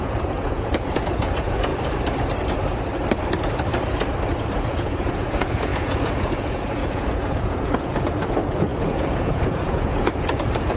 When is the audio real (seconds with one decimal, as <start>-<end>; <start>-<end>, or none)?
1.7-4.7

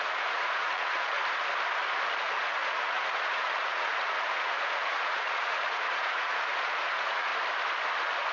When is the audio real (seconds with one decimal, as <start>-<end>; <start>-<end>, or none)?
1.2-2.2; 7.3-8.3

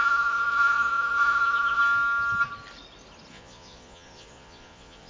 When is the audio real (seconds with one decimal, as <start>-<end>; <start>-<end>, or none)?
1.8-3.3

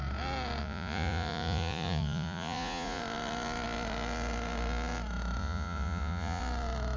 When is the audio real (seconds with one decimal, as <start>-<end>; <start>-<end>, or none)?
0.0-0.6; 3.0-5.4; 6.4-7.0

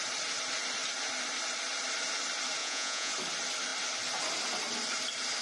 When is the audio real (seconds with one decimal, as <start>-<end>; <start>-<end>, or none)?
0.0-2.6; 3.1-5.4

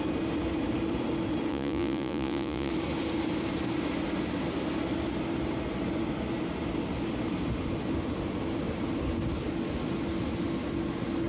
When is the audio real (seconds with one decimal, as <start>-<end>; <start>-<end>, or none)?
0.0-1.5; 2.7-11.3

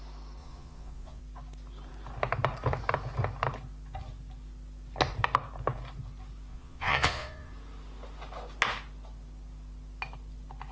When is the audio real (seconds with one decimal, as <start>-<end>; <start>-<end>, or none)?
0.0-0.4; 1.2-6.5; 7.5-10.7

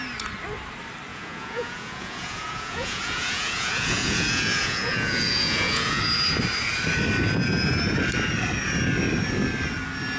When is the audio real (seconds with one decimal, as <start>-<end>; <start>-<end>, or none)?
0.0-1.1; 6.0-10.2